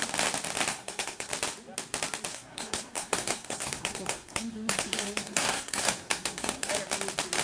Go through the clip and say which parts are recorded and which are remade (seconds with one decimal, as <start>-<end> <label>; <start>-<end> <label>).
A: 0.0-0.7 recorded; 0.7-1.3 remade; 1.3-2.3 recorded; 2.3-6.7 remade; 6.7-7.4 recorded